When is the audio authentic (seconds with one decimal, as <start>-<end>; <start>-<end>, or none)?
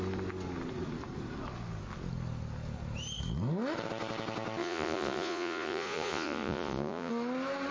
0.0-4.6; 7.1-7.7